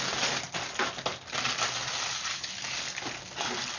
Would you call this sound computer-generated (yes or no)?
no